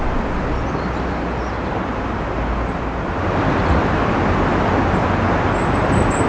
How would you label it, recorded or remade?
recorded